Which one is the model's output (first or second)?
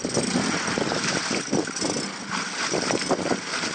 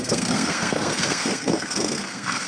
second